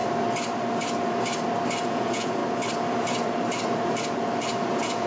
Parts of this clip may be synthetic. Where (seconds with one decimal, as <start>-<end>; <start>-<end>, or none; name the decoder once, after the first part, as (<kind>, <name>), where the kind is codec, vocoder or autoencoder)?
1.8-2.4 (vocoder, Vocos); 4.6-5.1